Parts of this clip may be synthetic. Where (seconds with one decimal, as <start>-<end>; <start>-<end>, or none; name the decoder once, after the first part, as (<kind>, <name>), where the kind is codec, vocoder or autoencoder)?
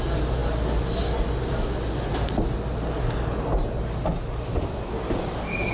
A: none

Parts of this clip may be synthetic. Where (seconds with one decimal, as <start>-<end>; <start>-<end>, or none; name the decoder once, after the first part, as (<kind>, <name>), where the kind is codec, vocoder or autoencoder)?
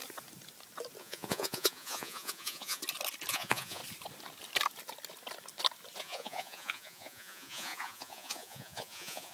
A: 1.0-2.8 (vocoder, Vocos); 3.3-3.8; 6.0-9.3